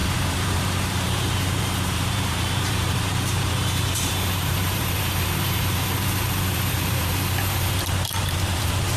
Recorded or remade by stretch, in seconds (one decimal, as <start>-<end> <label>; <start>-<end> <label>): 0.0-9.0 remade